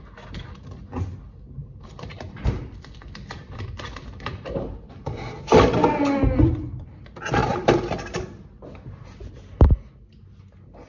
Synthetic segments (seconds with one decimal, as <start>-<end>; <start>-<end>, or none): 1.6-5.7